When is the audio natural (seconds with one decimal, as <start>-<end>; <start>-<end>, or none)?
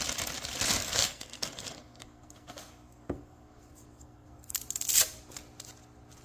0.0-0.8; 4.5-6.2